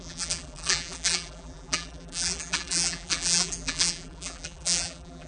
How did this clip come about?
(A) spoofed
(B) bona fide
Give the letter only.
A